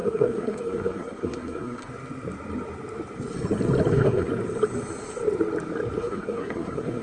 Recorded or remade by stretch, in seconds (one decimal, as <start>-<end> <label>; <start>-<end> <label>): 0.0-1.9 remade; 1.9-3.9 recorded; 3.9-4.3 remade; 4.3-6.0 recorded; 6.0-7.0 remade